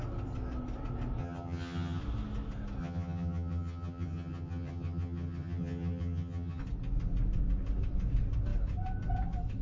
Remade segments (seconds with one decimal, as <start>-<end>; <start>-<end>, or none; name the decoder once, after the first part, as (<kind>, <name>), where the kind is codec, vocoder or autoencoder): 1.2-2.0 (vocoder, HiFi-GAN); 2.8-6.6